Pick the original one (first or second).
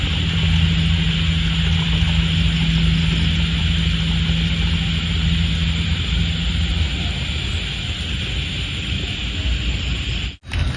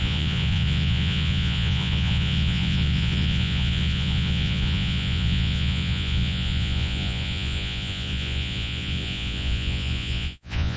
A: first